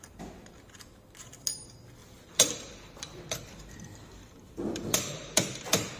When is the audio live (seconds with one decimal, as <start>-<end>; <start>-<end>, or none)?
0.0-2.0; 5.6-6.0